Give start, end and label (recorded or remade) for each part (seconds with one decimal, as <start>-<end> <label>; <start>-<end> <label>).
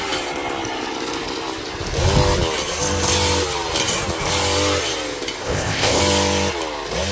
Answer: 0.0-5.4 recorded; 5.4-6.0 remade; 6.0-7.1 recorded